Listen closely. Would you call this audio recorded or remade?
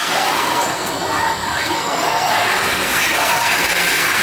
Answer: remade